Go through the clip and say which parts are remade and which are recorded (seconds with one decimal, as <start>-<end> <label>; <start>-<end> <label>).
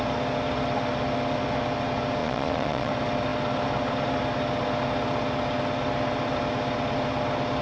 0.0-2.2 recorded; 2.2-2.9 remade; 2.9-7.6 recorded